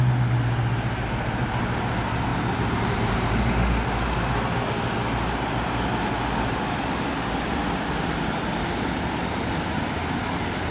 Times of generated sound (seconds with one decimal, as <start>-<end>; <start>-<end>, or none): 2.3-3.5